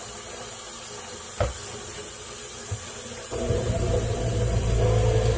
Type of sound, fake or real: real